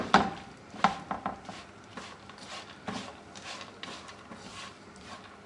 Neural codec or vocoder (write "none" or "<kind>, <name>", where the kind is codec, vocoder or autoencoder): none